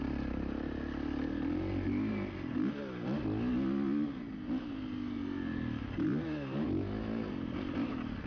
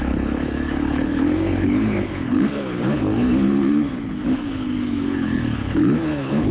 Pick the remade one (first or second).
second